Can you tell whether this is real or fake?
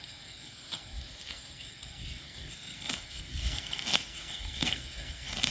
fake